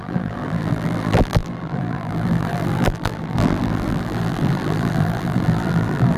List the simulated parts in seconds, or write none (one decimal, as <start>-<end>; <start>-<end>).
0.0-6.2